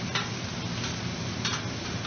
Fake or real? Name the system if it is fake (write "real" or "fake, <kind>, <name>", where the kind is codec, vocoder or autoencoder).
real